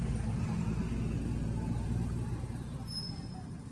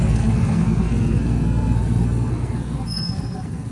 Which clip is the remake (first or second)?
second